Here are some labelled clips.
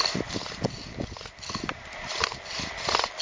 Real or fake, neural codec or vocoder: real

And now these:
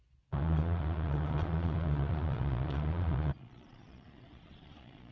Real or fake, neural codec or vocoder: fake, vocoder, Vocos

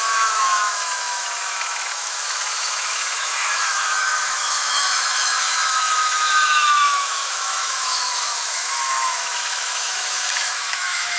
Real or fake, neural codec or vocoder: fake, autoencoder, DAC-VAE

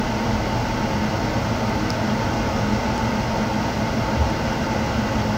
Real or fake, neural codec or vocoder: real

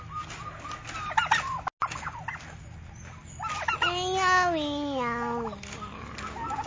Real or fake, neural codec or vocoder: real